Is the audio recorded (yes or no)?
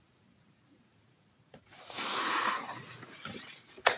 no